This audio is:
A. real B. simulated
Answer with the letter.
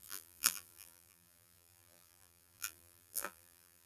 B